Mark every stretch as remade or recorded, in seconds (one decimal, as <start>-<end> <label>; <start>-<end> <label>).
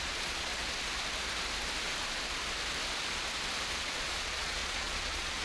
0.0-0.5 remade; 0.5-3.7 recorded; 3.7-5.4 remade